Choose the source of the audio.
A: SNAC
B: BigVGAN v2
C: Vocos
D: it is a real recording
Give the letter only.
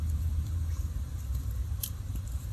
B